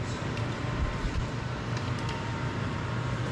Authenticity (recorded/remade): remade